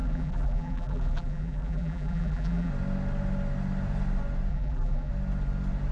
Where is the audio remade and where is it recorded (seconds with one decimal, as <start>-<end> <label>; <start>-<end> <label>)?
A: 0.0-2.7 remade; 2.7-4.5 recorded; 4.5-5.1 remade; 5.1-5.9 recorded

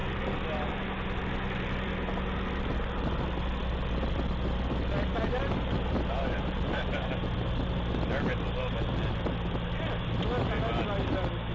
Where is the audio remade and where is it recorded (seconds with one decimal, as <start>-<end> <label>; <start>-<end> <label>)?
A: 0.0-11.5 recorded